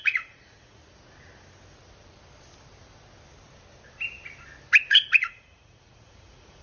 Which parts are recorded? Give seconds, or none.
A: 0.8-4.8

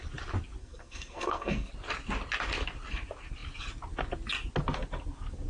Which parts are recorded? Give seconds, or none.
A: 0.0-0.6; 1.7-5.5

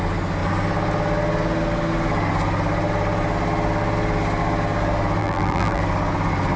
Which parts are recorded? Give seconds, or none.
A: 0.0-5.2; 5.8-6.6

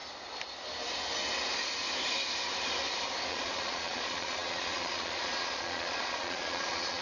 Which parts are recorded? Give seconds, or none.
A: 0.0-3.3

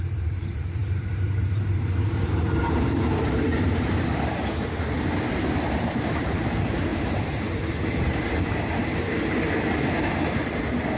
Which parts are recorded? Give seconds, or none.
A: none

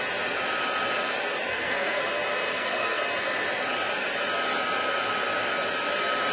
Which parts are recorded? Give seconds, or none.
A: 0.0-1.5; 2.0-2.5; 3.0-6.3

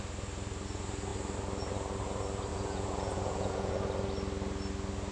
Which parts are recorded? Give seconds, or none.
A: 0.0-2.5; 3.7-5.1

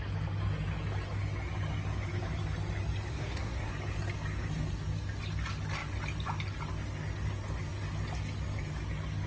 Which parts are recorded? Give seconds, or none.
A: 0.0-3.1; 3.7-9.3